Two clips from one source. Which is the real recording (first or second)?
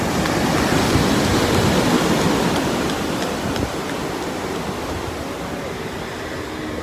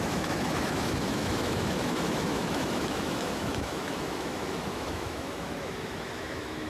first